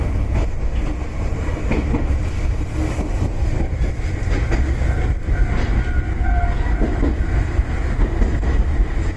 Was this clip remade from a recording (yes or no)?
no